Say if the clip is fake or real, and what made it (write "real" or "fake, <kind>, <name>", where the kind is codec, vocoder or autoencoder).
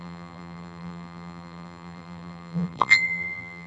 fake, vocoder, BigVGAN v2